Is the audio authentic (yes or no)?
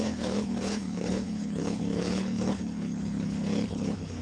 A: no